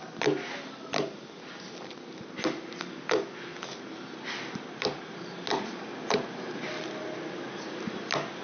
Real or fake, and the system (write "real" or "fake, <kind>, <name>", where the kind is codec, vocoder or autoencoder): real